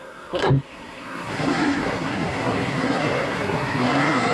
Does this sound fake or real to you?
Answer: fake